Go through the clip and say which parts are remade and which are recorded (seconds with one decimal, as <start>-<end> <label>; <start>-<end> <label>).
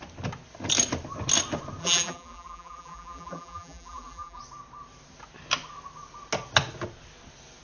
0.0-1.8 recorded; 1.8-4.4 remade; 4.4-7.6 recorded